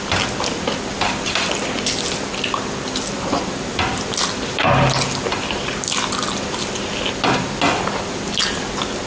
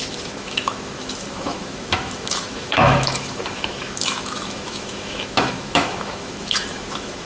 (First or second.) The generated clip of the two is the second